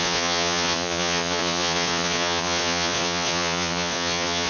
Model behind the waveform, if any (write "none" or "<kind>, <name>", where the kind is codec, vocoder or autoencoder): vocoder, Vocos